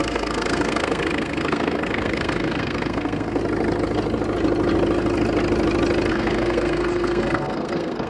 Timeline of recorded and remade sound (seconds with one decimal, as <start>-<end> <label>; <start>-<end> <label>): 0.0-3.4 remade; 3.4-6.1 recorded; 6.1-8.1 remade